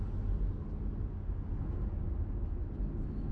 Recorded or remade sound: recorded